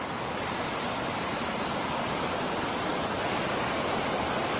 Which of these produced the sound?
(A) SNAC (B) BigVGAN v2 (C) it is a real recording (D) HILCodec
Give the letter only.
C